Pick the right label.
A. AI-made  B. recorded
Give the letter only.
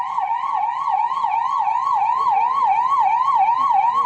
B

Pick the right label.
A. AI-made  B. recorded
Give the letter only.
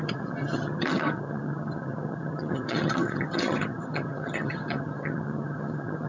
A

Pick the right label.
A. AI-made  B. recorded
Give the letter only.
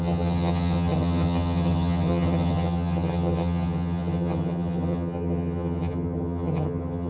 A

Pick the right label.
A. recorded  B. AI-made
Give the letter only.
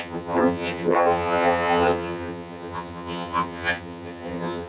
B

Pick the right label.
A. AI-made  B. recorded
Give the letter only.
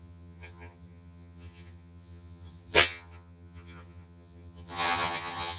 A